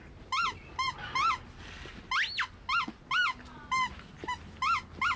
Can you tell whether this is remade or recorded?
recorded